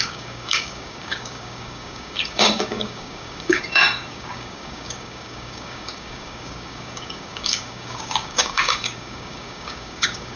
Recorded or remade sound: remade